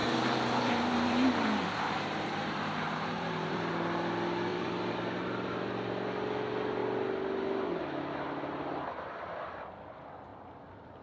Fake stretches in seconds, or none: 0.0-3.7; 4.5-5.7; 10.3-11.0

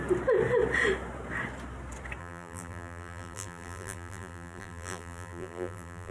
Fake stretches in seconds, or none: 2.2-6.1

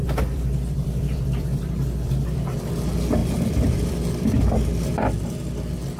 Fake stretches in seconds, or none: 0.0-2.4; 3.2-4.1